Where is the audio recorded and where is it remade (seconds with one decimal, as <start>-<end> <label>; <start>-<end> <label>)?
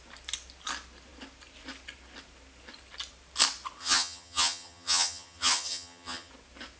0.0-3.8 recorded; 3.8-6.3 remade; 6.3-6.8 recorded